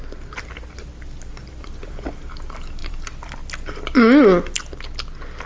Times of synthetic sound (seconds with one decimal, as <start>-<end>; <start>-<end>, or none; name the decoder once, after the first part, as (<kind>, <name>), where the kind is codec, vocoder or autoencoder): 1.3-2.1 (vocoder, BigVGAN v2); 2.8-3.4